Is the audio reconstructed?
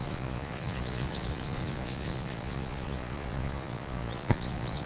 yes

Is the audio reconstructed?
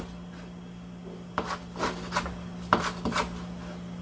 no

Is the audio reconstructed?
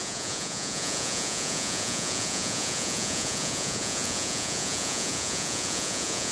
yes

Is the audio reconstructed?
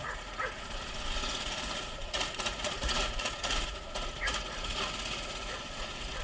yes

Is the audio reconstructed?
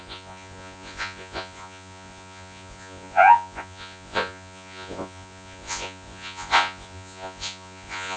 yes